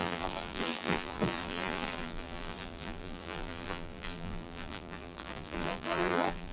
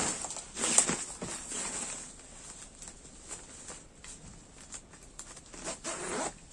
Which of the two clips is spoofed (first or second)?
first